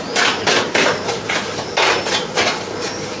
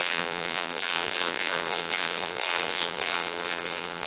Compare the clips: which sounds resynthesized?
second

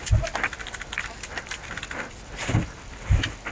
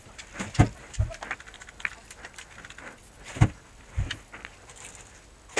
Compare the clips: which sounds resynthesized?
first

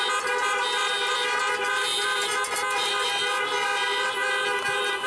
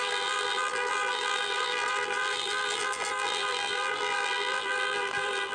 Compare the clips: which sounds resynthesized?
second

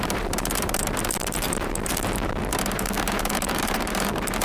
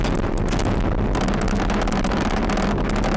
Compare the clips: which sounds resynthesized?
first